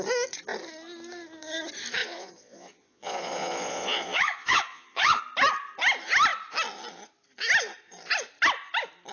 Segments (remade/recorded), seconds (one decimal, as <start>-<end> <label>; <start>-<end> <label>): 0.0-2.0 recorded; 2.0-5.2 remade; 5.2-9.1 recorded